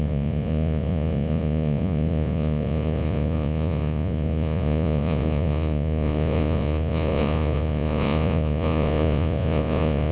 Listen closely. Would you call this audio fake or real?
fake